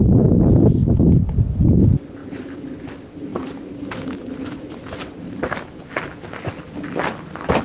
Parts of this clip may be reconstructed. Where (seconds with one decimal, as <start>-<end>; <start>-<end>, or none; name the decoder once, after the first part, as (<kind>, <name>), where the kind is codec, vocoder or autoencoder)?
0.0-7.6 (vocoder, BigVGAN v2)

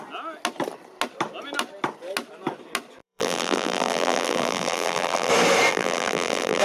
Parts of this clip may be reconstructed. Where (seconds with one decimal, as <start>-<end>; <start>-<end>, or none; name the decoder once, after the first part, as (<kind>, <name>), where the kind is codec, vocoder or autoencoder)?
3.0-5.3 (vocoder, BigVGAN v2); 5.7-6.6

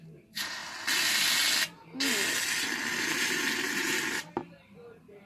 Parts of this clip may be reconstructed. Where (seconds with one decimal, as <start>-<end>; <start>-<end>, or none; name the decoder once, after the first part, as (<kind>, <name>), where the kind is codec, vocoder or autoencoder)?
0.0-0.6 (vocoder, BigVGAN v2); 2.8-5.3